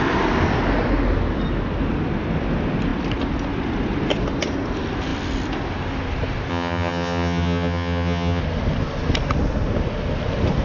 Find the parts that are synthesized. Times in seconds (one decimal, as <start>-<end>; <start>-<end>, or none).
6.5-8.4